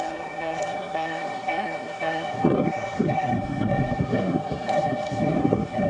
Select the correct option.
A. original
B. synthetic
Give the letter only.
B